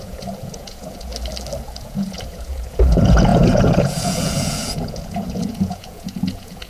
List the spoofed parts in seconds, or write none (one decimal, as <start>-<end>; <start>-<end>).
0.0-1.1; 1.6-6.7